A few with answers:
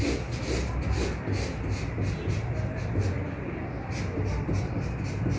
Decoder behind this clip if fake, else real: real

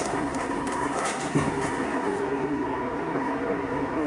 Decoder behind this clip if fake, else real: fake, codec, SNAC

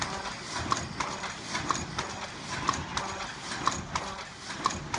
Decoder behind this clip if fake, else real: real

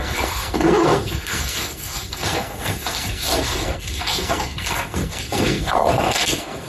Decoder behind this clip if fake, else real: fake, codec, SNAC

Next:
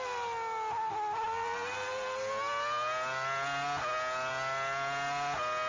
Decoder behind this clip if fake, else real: real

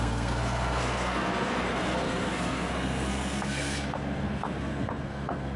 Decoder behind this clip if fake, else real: fake, codec, SNAC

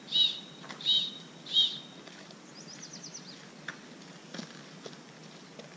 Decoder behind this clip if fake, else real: real